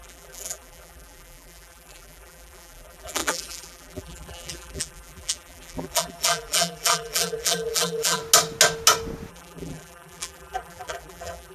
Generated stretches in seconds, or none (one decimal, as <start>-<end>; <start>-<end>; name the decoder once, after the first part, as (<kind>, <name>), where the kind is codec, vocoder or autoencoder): 0.0-8.2 (vocoder, BigVGAN v2); 9.3-11.5